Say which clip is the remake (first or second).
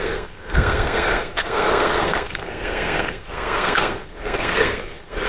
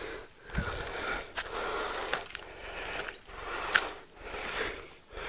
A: first